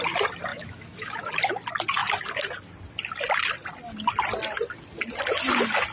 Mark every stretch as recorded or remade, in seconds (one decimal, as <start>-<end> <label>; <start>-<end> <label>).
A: 0.0-0.5 recorded; 0.5-1.3 remade; 1.3-5.9 recorded